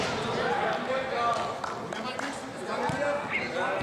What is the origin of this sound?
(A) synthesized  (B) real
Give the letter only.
B